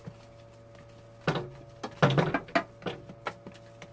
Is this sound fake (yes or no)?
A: no